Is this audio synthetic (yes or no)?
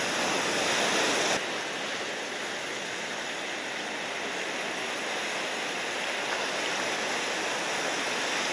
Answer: no